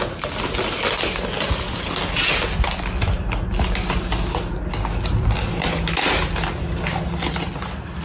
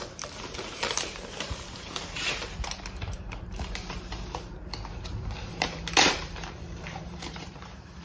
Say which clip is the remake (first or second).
second